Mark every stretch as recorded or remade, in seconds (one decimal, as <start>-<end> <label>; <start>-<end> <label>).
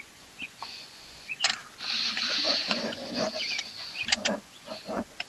0.0-1.6 remade; 1.6-2.1 recorded; 2.1-5.3 remade